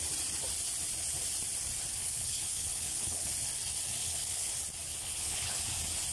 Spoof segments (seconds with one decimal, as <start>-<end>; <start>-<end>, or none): 2.0-3.3; 4.0-4.5; 4.9-5.6